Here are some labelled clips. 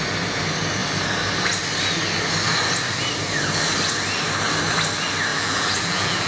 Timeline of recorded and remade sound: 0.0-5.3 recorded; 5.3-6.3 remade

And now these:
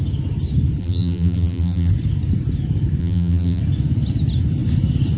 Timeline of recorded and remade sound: 0.0-0.8 recorded; 0.8-1.9 remade; 1.9-3.0 recorded; 3.0-3.6 remade; 3.6-5.2 recorded

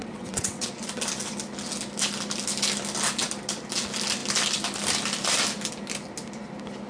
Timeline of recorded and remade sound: 0.0-0.7 remade; 0.7-6.9 recorded

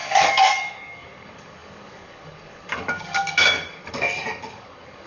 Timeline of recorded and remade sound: 0.0-5.1 remade

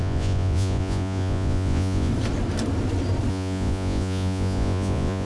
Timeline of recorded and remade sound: 0.0-2.1 remade; 2.1-3.3 recorded; 3.3-5.2 remade

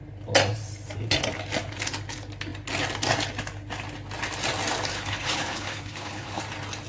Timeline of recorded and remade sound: 0.0-4.9 recorded; 4.9-6.4 remade; 6.4-6.9 recorded

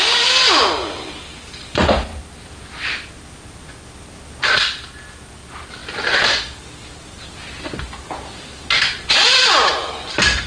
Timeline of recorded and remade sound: 0.0-10.5 recorded